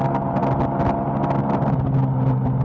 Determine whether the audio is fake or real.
real